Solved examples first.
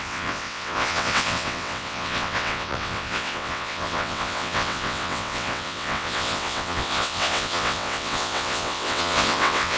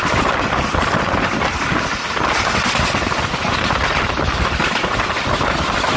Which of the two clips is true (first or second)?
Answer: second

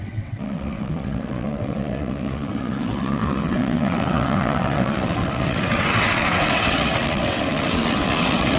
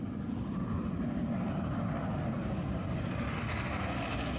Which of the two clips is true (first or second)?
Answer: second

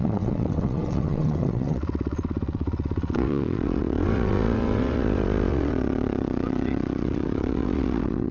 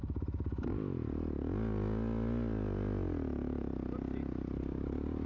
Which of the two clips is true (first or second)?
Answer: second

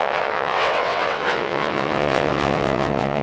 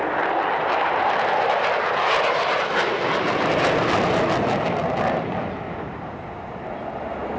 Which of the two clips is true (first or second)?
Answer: second